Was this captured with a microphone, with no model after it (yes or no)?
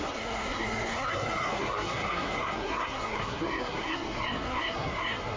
no